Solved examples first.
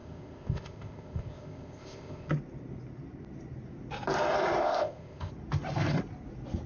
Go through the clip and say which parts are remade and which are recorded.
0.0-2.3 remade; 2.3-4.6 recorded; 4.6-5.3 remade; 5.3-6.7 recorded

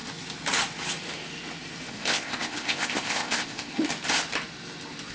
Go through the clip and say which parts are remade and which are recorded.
0.0-1.9 recorded; 1.9-3.7 remade; 3.7-5.1 recorded

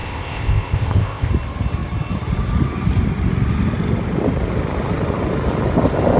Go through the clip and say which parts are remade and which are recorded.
0.0-1.3 remade; 1.3-6.2 recorded

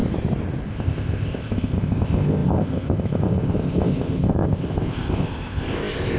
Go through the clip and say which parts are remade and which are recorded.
0.0-0.7 recorded; 0.7-6.2 remade

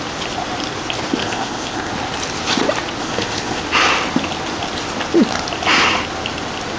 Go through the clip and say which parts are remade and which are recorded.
0.0-1.2 recorded; 1.2-1.9 remade; 1.9-3.0 recorded; 3.0-3.6 remade; 3.6-6.8 recorded

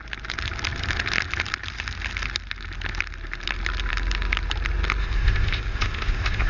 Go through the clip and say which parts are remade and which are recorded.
0.0-5.0 recorded; 5.0-6.5 remade

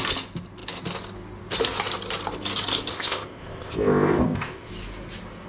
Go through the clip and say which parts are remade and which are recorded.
0.0-2.9 recorded; 2.9-4.7 remade; 4.7-5.5 recorded

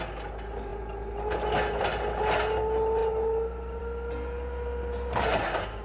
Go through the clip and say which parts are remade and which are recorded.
0.0-5.8 recorded